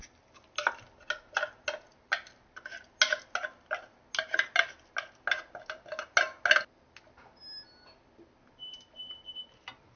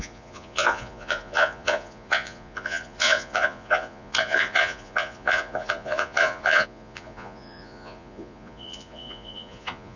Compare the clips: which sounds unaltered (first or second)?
first